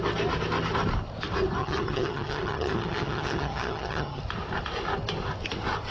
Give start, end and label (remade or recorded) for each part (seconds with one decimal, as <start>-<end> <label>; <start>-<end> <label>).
0.0-1.6 recorded; 1.6-4.2 remade; 4.2-5.9 recorded